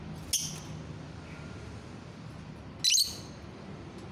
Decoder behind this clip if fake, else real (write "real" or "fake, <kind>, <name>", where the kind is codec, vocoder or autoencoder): real